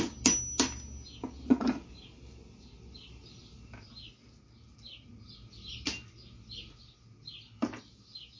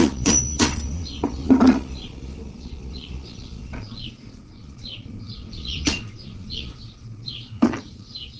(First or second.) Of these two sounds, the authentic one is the first